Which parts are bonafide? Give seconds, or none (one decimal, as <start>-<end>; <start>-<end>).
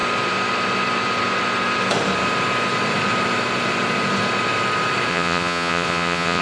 0.0-5.1